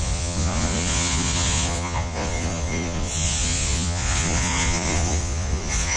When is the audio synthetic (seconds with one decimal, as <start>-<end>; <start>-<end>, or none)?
0.0-6.0